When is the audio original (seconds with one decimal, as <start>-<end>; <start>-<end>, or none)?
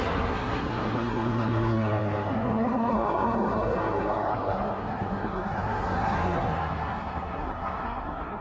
none